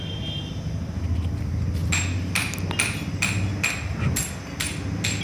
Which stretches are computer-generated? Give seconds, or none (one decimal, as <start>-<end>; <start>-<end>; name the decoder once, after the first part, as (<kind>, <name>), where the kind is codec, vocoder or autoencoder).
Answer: none